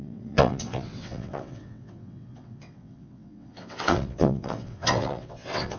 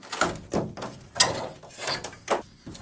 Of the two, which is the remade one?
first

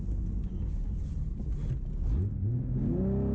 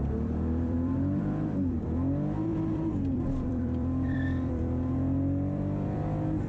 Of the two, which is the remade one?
second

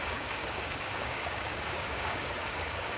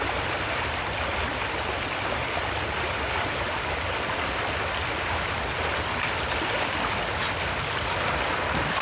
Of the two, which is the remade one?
first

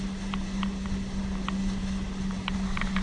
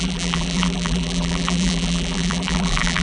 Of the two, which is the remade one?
second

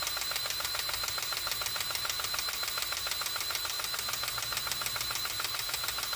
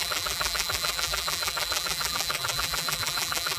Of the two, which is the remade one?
second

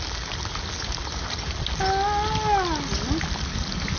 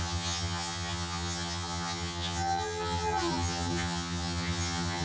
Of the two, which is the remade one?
second